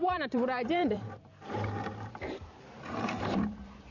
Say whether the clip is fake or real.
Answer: fake